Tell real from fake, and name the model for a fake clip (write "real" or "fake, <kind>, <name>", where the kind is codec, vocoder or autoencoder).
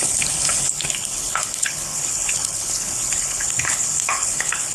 fake, codec, HILCodec